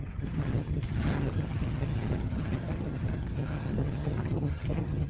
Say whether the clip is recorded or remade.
remade